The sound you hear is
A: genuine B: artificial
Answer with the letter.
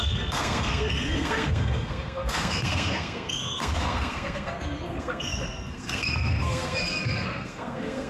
B